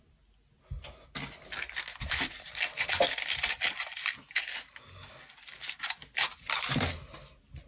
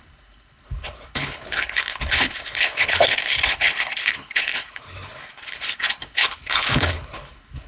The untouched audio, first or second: first